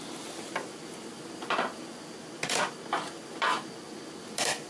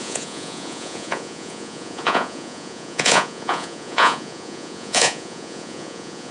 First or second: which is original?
first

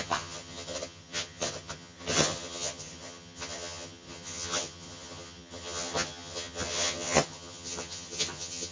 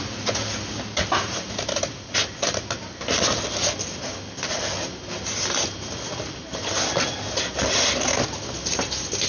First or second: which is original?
second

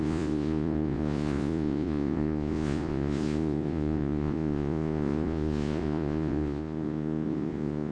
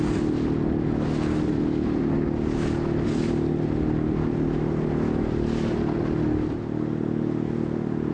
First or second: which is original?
second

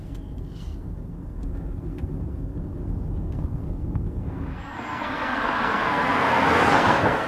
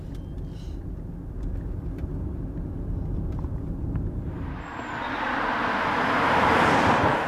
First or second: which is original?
second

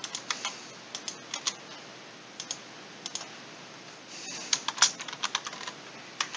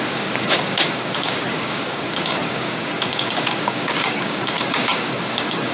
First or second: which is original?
first